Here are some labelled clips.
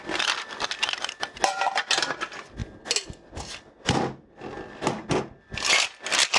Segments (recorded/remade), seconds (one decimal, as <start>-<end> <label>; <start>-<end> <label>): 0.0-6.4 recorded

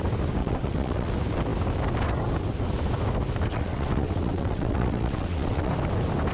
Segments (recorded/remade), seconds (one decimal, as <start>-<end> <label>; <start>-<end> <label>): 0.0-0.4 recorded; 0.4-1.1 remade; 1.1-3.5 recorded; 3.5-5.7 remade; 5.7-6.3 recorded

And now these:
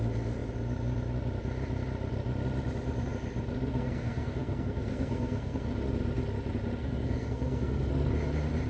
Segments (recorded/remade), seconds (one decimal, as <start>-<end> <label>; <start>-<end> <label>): 0.0-3.7 recorded; 3.7-5.7 remade; 5.7-6.8 recorded; 6.8-7.9 remade; 7.9-8.7 recorded

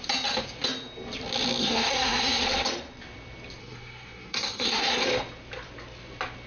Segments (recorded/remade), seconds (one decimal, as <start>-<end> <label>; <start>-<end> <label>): 0.0-1.6 recorded; 1.6-2.4 remade; 2.4-3.6 recorded; 3.6-5.0 remade; 5.0-6.5 recorded

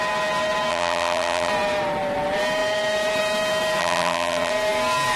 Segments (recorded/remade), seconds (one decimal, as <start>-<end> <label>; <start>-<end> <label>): 0.0-0.7 recorded; 0.7-1.5 remade; 1.5-3.8 recorded; 3.8-4.5 remade; 4.5-5.2 recorded